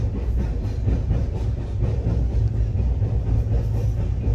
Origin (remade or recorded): recorded